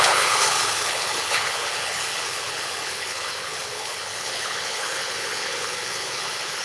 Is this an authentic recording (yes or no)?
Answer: no